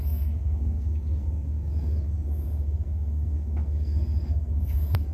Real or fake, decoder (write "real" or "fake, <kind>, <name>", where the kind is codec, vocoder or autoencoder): fake, codec, SNAC